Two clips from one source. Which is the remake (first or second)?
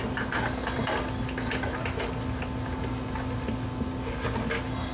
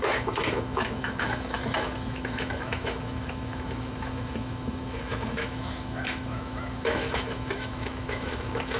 second